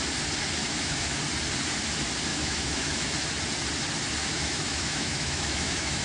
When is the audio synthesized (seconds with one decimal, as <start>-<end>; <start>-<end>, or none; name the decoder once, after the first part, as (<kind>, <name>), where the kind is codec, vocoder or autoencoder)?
0.6-1.2 (autoencoder, DAC-VAE); 2.3-3.1; 4.2-6.0